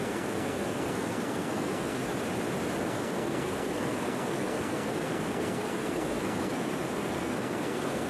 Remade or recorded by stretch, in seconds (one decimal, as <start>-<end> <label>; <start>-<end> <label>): 0.0-2.1 remade; 2.1-2.8 recorded; 2.8-8.1 remade